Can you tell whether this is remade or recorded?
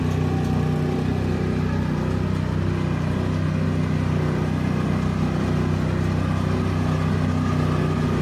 recorded